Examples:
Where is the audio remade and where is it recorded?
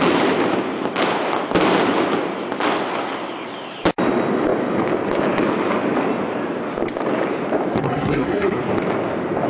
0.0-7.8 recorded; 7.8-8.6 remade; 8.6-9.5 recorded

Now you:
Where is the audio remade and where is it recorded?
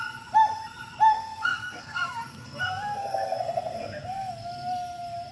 0.0-1.1 recorded; 1.1-4.3 remade; 4.3-5.3 recorded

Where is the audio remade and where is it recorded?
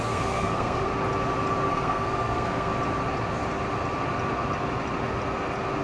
0.0-0.9 remade; 0.9-1.7 recorded; 1.7-2.7 remade; 2.7-5.8 recorded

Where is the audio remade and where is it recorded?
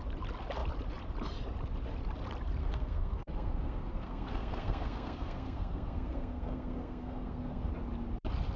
0.0-2.6 recorded; 2.6-7.7 remade; 7.7-8.6 recorded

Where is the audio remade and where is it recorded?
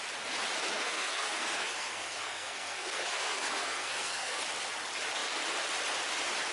0.0-0.7 recorded; 0.7-4.4 remade; 4.4-6.5 recorded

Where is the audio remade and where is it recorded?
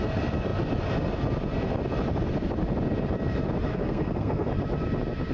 0.0-3.7 recorded; 3.7-4.5 remade; 4.5-5.3 recorded